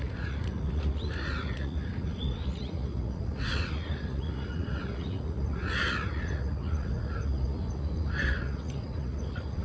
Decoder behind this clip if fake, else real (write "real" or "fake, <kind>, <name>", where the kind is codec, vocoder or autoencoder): fake, vocoder, Vocos